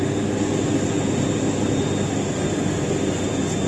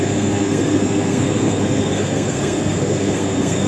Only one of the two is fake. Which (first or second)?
second